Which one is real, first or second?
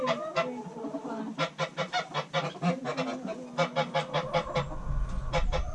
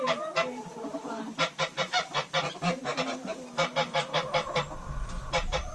first